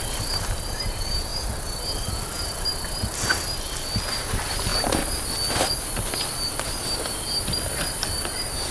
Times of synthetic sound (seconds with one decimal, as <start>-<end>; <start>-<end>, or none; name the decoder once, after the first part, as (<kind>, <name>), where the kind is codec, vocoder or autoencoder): 0.0-2.7 (vocoder, BigVGAN v2); 3.6-4.7; 7.9-8.7